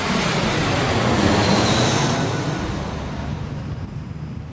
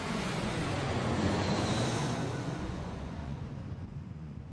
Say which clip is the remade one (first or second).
second